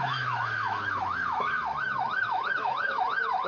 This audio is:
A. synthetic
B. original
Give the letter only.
A